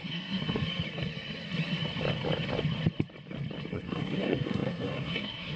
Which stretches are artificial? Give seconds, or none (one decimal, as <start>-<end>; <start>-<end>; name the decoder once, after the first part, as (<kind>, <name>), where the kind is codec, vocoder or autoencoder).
0.0-0.4 (codec, SNAC); 3.7-5.6